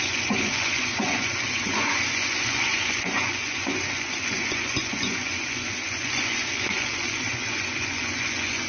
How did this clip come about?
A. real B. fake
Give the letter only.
B